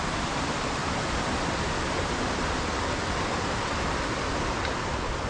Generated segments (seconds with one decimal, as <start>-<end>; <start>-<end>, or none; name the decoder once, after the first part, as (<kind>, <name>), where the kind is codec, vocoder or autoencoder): none